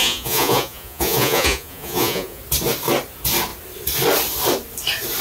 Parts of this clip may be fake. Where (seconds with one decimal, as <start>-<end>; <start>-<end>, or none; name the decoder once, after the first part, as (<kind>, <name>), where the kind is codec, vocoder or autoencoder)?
0.0-2.4 (vocoder, Vocos)